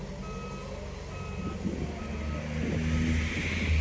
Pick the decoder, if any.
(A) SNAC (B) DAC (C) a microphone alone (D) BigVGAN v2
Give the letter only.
C